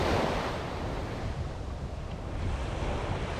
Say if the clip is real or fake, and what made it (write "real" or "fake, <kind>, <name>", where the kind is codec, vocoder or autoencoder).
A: real